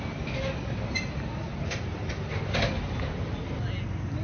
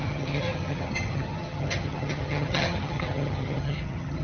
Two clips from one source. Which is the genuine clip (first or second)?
first